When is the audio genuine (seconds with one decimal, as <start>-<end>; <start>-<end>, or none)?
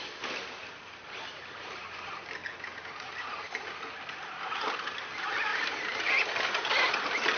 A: 0.0-0.4; 1.0-5.5; 6.1-7.4